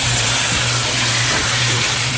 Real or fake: fake